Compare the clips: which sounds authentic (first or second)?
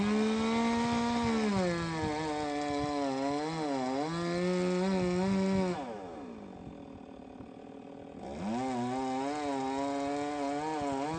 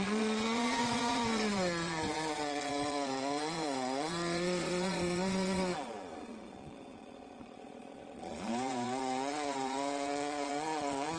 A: first